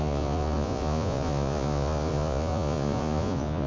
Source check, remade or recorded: remade